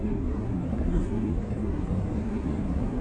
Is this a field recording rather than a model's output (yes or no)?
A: no